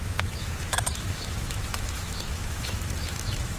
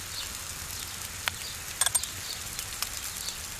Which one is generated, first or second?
first